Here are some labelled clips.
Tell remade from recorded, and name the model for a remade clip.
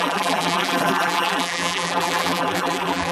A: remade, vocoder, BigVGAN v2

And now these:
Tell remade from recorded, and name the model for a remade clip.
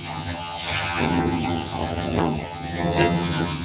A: remade, vocoder, HiFi-GAN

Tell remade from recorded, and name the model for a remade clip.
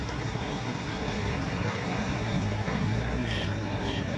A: remade, codec, SNAC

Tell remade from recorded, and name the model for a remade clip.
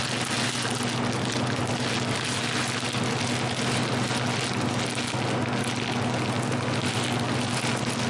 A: recorded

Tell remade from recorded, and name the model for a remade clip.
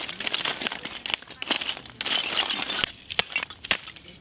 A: recorded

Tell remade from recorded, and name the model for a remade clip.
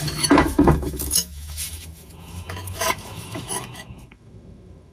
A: remade, autoencoder, DAC-VAE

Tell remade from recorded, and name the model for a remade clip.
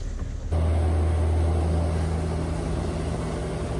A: recorded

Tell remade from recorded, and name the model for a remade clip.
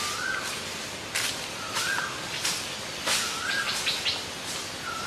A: recorded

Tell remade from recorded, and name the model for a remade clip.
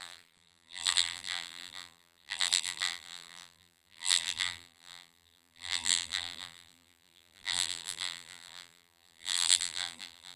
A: remade, vocoder, BigVGAN v2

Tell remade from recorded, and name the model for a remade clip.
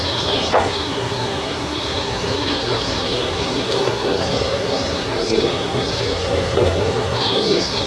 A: remade, codec, SNAC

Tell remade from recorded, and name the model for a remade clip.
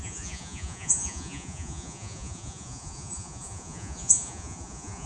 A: remade, vocoder, Vocos